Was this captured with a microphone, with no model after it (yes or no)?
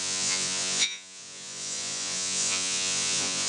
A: no